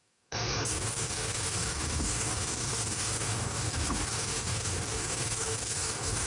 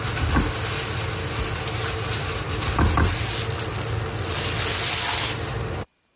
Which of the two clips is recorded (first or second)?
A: second